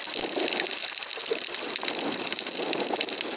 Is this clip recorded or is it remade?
recorded